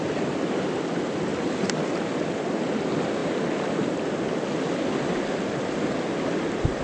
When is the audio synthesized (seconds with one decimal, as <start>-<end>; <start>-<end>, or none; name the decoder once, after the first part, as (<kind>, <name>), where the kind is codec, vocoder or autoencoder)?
none